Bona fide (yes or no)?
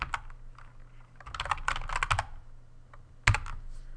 yes